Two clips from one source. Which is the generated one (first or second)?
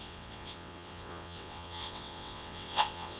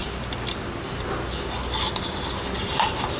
first